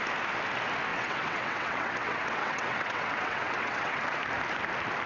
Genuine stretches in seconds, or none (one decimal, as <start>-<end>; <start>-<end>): 0.0-0.9; 4.0-5.1